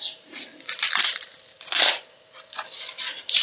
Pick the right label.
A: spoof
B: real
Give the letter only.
A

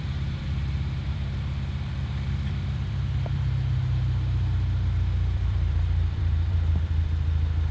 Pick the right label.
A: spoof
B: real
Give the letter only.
A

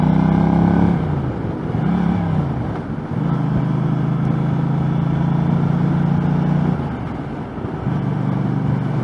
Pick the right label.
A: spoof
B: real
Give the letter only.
B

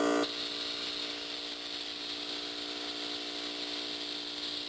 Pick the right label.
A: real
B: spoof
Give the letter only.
A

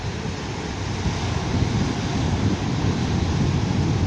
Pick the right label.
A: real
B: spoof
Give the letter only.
A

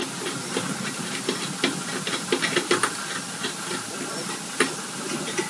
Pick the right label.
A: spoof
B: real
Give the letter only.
B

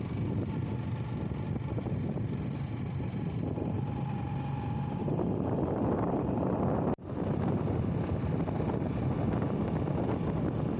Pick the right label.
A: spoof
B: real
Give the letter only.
B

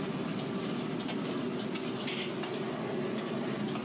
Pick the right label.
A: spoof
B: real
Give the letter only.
B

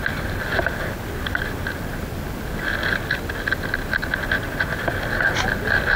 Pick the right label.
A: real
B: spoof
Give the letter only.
A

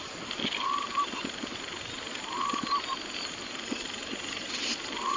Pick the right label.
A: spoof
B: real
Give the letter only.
B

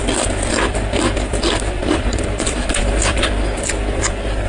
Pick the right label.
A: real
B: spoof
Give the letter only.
B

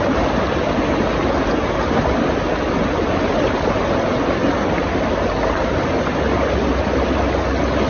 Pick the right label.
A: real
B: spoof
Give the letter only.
A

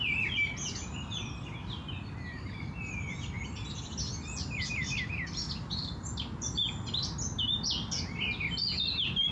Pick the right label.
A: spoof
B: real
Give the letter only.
B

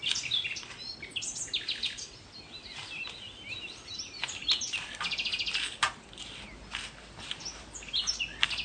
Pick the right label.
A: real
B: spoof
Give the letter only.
A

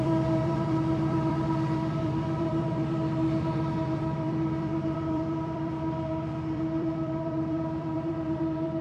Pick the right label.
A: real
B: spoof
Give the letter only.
B